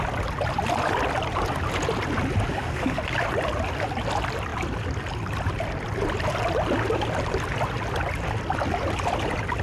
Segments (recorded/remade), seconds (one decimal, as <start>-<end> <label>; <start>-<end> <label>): 0.0-2.5 recorded; 2.5-3.0 remade; 3.0-9.6 recorded

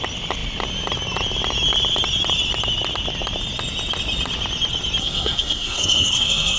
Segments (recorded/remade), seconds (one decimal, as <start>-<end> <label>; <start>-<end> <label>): 0.0-5.0 recorded; 5.0-6.6 remade

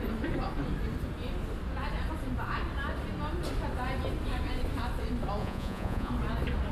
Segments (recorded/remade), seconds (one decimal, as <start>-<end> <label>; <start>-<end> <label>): 0.0-5.4 recorded; 5.4-6.1 remade; 6.1-6.7 recorded

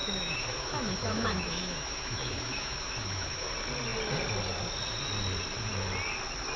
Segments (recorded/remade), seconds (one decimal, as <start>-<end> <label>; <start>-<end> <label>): 0.0-3.5 remade; 3.5-6.6 recorded

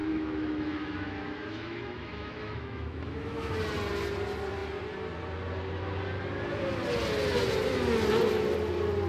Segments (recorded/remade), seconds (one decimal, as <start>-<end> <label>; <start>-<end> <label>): 0.0-3.5 remade; 3.5-9.1 recorded

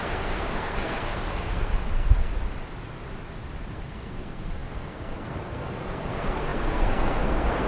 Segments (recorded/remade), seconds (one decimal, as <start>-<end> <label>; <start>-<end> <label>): 0.0-2.3 remade; 2.3-3.7 recorded; 3.7-7.7 remade

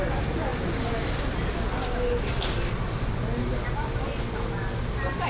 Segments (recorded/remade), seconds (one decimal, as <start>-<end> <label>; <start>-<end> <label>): 0.0-5.3 recorded